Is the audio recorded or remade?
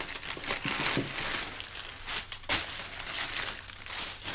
recorded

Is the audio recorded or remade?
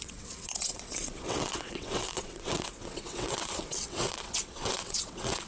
remade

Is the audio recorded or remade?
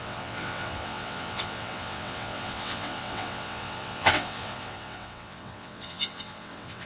remade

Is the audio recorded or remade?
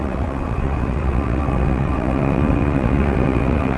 remade